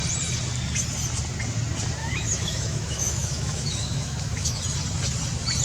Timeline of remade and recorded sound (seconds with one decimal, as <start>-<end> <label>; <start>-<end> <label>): 0.0-2.0 recorded; 2.0-4.6 remade; 4.6-5.6 recorded